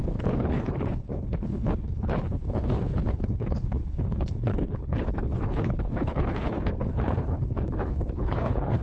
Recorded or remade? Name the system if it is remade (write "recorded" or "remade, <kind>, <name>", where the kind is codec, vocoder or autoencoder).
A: remade, codec, HILCodec